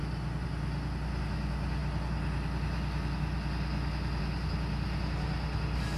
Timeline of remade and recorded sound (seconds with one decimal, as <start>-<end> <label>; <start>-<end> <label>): 0.0-6.0 recorded